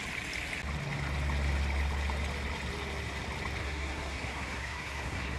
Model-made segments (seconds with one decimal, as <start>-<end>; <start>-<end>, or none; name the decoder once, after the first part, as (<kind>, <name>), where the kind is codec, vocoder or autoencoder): 3.6-5.4 (codec, SNAC)